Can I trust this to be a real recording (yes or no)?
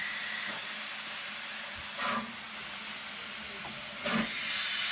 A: yes